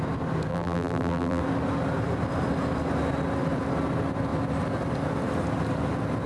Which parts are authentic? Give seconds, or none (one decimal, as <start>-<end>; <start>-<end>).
0.0-0.5; 1.4-6.3